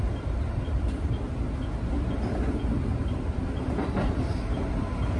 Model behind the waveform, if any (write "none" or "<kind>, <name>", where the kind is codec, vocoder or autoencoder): vocoder, BigVGAN v2